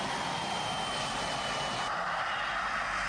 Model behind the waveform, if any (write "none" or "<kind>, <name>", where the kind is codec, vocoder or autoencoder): none